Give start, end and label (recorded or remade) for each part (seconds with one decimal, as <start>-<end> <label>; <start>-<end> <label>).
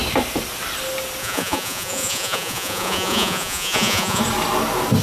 0.0-1.2 recorded; 1.2-4.2 remade; 4.2-5.0 recorded